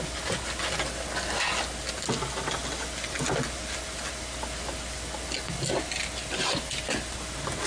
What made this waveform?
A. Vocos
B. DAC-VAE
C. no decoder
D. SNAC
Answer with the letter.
C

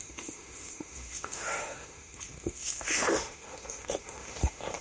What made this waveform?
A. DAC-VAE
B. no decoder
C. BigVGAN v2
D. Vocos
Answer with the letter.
A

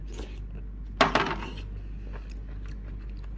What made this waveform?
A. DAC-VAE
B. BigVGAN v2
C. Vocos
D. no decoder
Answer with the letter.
D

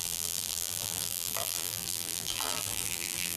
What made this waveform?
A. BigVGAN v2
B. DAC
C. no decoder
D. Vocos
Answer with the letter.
A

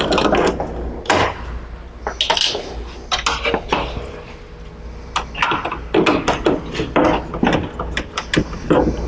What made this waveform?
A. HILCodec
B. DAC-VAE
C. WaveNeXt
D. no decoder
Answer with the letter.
D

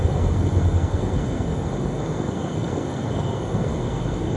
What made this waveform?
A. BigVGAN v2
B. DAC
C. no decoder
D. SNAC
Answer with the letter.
D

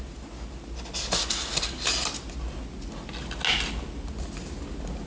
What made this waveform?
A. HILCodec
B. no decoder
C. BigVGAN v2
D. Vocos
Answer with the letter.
B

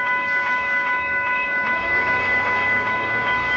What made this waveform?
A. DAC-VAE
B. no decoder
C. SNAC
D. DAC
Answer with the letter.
A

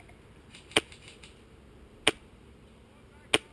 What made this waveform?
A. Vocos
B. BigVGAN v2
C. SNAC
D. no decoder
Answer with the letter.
D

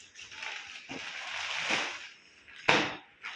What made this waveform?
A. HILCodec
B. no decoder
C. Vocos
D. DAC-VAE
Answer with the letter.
B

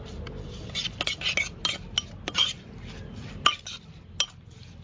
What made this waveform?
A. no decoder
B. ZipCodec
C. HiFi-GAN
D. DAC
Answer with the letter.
A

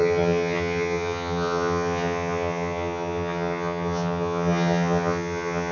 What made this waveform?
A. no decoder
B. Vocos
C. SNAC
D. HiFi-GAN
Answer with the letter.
D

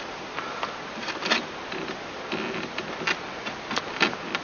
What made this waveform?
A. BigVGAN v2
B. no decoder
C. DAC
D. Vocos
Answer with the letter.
B